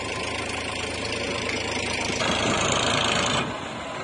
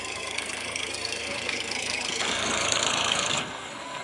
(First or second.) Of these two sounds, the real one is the first